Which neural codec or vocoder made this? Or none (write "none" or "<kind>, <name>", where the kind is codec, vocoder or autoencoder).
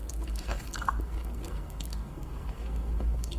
codec, SNAC